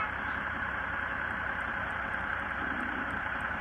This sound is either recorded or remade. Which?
remade